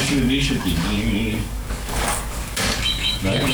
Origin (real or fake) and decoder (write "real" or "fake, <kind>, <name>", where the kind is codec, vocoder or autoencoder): fake, codec, DAC